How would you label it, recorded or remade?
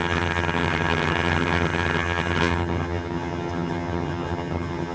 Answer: remade